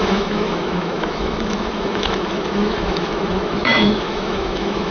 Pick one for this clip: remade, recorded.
remade